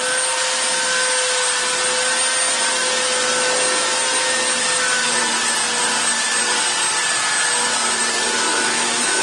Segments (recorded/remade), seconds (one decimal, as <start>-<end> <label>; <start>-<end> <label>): 0.0-8.5 recorded; 8.5-9.2 remade